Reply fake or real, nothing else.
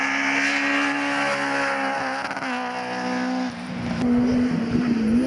real